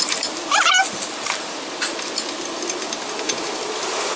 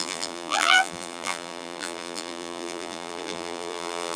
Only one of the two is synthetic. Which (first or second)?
second